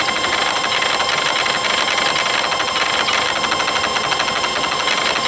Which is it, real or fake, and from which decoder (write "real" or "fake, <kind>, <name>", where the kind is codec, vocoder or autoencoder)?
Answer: real